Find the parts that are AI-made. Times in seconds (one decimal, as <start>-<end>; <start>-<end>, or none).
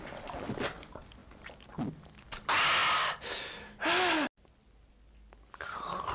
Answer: none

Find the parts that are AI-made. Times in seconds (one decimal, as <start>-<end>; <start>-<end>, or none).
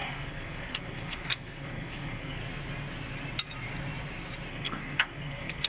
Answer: 0.0-2.4; 4.5-5.7